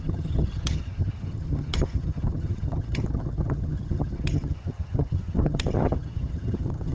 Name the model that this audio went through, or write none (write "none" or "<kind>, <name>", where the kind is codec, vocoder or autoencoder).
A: vocoder, HiFi-GAN